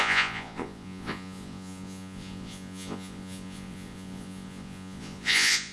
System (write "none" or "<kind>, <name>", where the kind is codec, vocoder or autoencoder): vocoder, Vocos